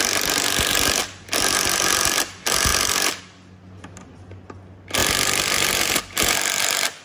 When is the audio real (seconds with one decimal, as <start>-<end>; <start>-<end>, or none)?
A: 0.0-2.7; 3.2-7.0